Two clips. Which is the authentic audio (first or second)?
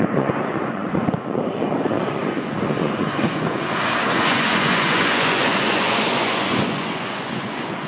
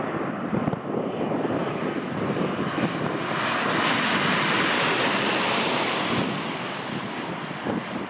second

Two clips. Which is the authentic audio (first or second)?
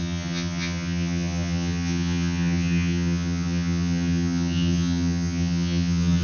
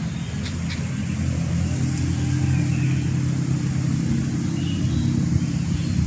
second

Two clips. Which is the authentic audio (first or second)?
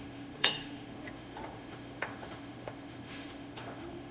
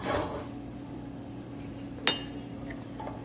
second